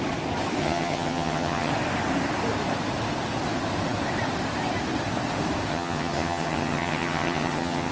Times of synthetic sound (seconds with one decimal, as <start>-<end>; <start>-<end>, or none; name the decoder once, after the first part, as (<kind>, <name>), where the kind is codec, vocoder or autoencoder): 0.6-1.7 (vocoder, HiFi-GAN); 5.7-7.9